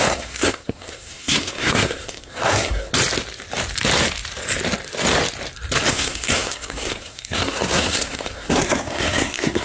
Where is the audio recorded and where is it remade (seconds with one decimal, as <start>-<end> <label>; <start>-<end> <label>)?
0.0-2.9 remade; 2.9-5.9 recorded; 5.9-9.6 remade